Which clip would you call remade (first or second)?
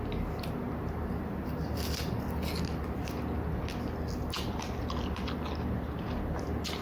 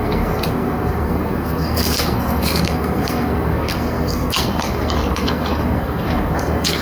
second